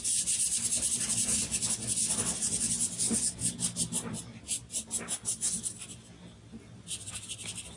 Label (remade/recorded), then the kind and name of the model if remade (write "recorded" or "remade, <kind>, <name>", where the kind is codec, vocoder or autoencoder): recorded